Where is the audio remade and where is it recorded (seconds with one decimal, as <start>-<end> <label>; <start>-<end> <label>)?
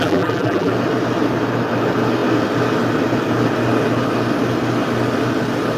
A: 0.0-0.7 remade; 0.7-5.8 recorded